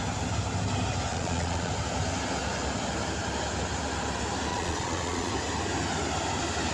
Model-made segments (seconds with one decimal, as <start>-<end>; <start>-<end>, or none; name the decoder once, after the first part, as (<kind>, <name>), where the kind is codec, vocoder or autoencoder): 1.1-1.7 (vocoder, Vocos); 4.5-5.3